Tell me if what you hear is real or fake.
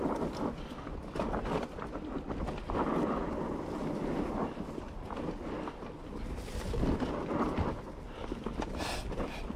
real